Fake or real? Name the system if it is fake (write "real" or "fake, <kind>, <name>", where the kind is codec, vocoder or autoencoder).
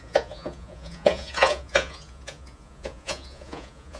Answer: fake, vocoder, Vocos